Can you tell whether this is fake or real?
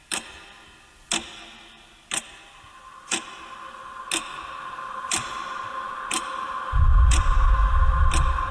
real